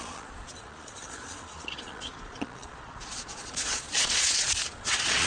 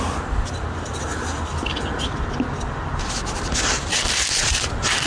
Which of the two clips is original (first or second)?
second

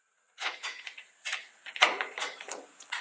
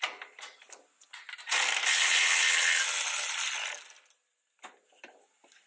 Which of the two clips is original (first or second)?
second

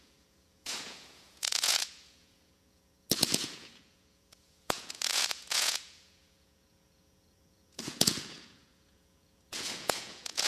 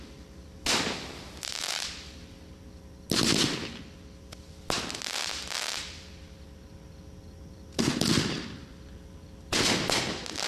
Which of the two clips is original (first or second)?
second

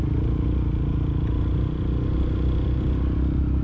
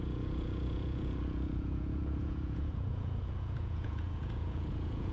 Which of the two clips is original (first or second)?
first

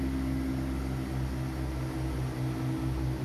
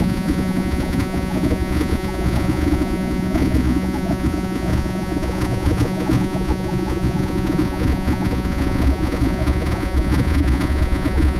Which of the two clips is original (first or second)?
first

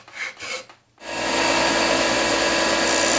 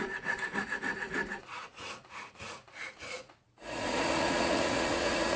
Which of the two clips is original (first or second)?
first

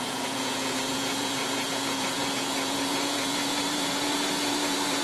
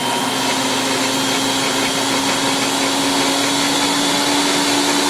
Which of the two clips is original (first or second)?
second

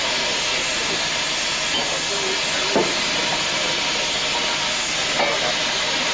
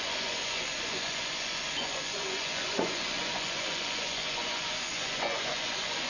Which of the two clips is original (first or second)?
first